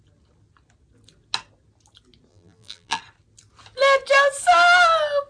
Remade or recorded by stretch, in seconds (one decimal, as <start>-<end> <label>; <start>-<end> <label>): 0.0-2.3 recorded; 2.3-3.0 remade; 3.0-5.3 recorded